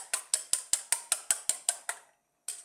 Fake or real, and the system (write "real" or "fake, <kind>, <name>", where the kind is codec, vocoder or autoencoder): real